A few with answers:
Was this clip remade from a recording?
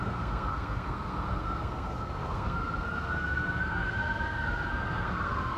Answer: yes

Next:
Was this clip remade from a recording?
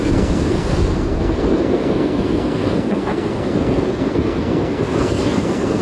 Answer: yes